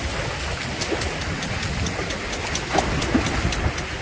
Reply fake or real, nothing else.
real